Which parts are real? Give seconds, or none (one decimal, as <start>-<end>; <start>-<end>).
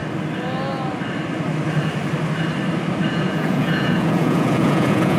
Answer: 0.0-3.1